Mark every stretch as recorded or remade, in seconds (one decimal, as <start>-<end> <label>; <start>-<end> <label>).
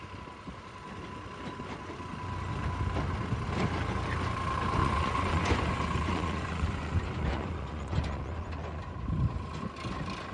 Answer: 0.0-4.8 recorded; 4.8-8.8 remade; 8.8-10.3 recorded